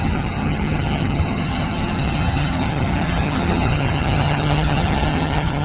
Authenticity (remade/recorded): remade